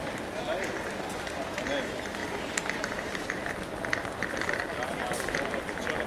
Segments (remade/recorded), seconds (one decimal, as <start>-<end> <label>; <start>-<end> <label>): 0.0-6.1 recorded